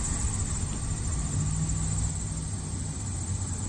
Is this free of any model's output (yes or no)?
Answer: yes